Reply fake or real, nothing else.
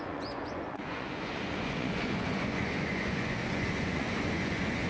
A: fake